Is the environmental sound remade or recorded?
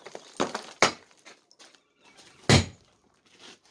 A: recorded